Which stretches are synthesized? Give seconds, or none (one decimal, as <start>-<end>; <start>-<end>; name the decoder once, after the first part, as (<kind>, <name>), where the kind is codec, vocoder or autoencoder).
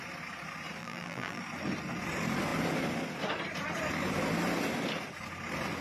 0.8-1.4 (vocoder, BigVGAN v2)